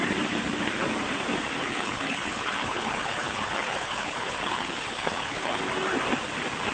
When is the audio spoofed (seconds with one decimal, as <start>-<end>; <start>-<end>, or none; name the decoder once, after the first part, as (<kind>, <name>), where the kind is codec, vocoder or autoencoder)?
1.6-5.6 (codec, HILCodec)